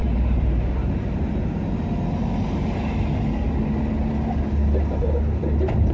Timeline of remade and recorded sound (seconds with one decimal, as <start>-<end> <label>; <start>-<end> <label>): 0.0-0.7 remade; 0.7-5.9 recorded